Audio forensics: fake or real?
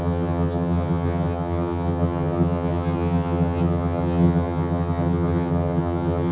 fake